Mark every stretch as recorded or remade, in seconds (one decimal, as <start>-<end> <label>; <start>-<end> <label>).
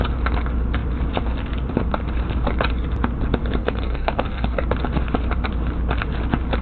0.0-3.6 recorded; 3.6-4.6 remade; 4.6-6.6 recorded